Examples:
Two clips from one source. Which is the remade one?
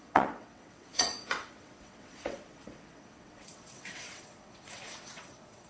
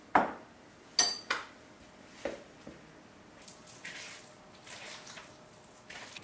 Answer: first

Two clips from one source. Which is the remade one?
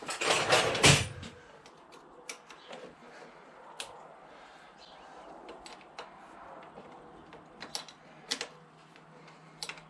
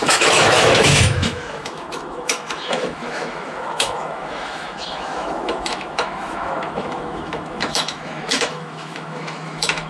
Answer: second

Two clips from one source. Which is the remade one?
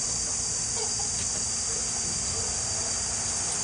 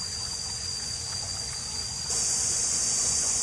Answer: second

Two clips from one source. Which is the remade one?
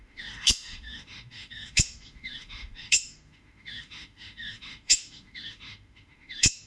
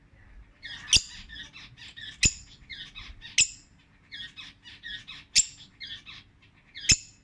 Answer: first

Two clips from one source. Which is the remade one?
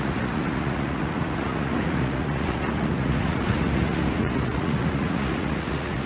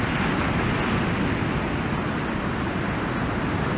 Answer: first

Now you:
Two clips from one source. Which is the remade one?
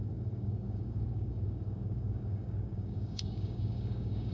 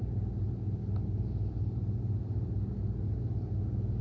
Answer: first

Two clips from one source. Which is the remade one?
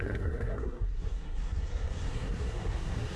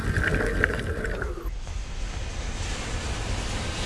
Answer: first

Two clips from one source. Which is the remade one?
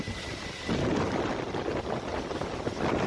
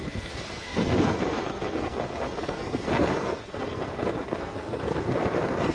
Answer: second